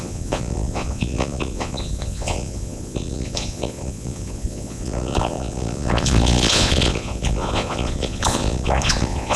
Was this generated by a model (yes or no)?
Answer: yes